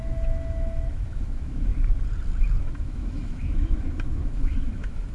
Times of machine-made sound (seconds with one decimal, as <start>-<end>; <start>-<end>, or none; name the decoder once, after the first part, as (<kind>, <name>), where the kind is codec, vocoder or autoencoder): 0.0-1.7 (autoencoder, DAC-VAE); 2.6-5.1